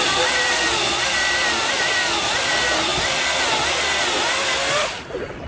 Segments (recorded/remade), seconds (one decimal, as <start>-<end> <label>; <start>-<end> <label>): 0.0-5.5 recorded